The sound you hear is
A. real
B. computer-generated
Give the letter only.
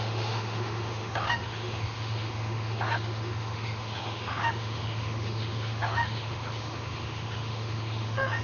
B